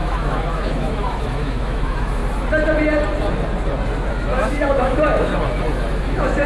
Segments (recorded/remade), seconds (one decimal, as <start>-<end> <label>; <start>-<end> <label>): 0.0-2.2 remade; 2.2-4.1 recorded; 4.1-5.3 remade; 5.3-5.9 recorded; 5.9-6.5 remade